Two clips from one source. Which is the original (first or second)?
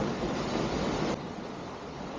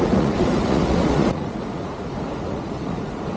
first